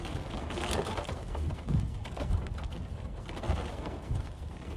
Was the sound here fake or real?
fake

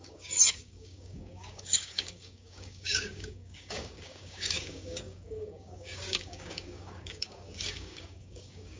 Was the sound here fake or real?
fake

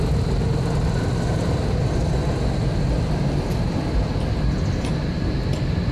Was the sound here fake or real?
real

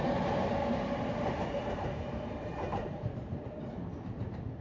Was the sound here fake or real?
real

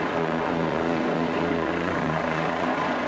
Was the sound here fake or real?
fake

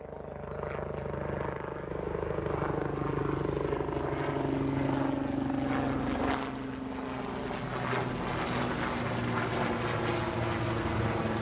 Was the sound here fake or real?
real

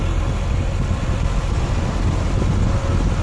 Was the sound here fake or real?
real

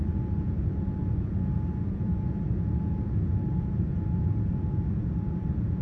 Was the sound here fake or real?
fake